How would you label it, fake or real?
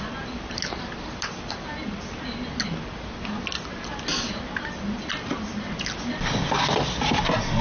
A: real